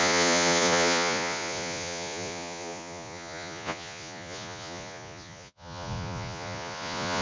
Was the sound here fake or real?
fake